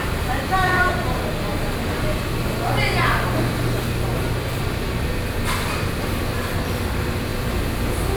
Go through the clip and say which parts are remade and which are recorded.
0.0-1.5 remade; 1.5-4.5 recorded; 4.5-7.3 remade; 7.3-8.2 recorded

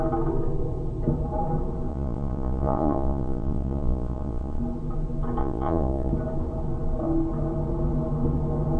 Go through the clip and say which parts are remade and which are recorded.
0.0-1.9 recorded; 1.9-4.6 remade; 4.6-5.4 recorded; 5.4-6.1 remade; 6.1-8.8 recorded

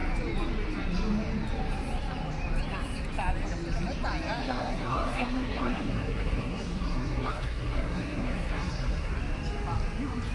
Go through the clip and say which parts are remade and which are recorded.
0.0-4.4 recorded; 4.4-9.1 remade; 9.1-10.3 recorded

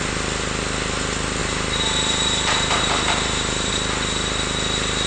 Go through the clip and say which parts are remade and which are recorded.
0.0-1.4 recorded; 1.4-3.7 remade; 3.7-5.1 recorded

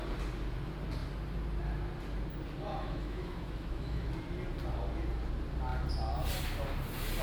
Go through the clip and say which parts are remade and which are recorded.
0.0-2.7 recorded; 2.7-4.1 remade; 4.1-7.2 recorded